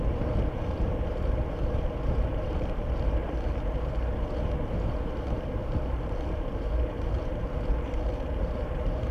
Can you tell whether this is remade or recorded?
remade